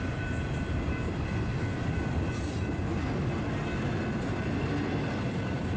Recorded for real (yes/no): yes